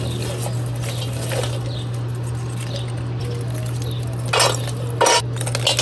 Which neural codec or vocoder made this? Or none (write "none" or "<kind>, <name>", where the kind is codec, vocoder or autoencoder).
none